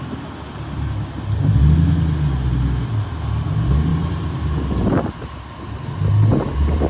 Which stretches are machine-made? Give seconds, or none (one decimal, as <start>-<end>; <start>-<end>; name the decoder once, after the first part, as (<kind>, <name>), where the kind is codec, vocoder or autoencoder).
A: none